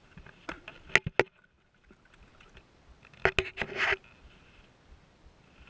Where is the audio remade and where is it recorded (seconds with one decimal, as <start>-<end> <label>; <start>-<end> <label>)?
0.0-5.7 recorded